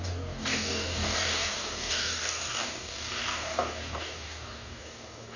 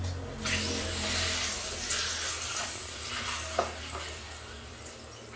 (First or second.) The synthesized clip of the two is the first